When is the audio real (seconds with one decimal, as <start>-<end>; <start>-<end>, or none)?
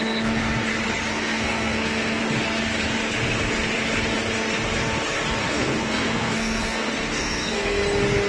0.4-1.1; 2.2-5.4; 7.8-8.3